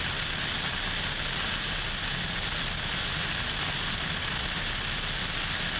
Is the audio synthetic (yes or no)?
no